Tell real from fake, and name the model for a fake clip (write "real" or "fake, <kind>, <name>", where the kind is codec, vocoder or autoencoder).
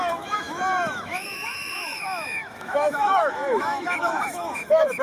fake, autoencoder, DAC-VAE